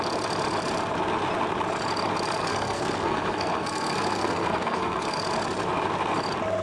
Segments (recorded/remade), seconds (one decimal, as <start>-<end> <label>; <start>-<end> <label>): 0.0-2.4 recorded; 2.4-5.2 remade; 5.2-6.6 recorded